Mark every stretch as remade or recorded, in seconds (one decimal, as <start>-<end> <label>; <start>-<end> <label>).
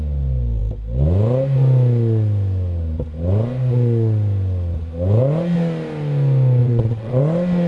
0.0-6.6 recorded; 6.6-7.2 remade; 7.2-7.7 recorded